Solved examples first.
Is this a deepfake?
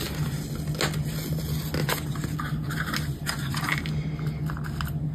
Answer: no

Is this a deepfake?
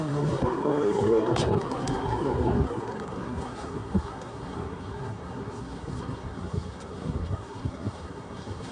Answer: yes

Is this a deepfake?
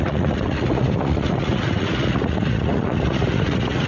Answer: yes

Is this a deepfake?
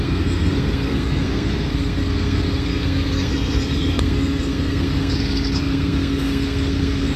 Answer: yes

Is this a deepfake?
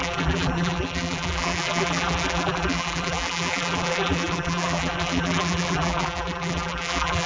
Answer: yes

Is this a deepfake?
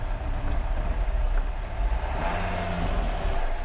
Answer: no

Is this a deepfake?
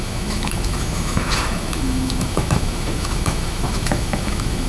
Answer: yes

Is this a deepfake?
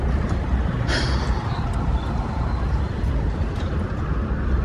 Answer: no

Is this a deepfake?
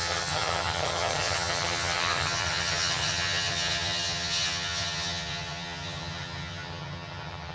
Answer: yes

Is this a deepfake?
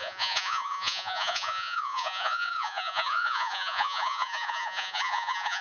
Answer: yes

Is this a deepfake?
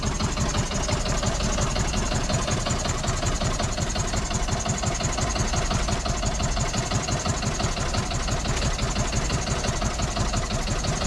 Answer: no